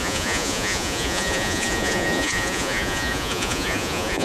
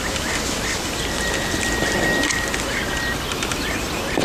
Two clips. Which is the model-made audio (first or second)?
first